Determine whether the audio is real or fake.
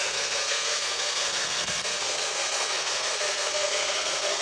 fake